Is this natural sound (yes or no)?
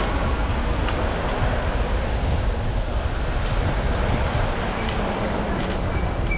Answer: yes